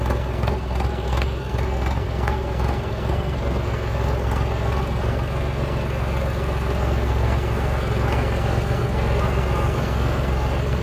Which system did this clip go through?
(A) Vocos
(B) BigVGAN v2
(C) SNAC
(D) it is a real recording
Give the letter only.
C